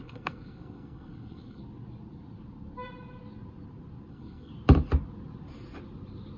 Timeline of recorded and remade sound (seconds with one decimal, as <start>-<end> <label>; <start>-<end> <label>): 0.0-1.6 remade; 1.6-4.1 recorded; 4.1-4.5 remade; 4.5-6.4 recorded